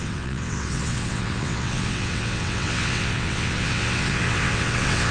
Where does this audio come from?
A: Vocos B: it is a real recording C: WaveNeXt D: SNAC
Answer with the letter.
C